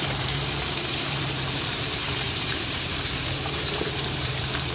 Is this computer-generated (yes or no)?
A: yes